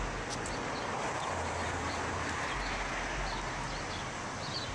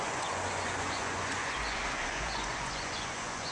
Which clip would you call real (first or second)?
first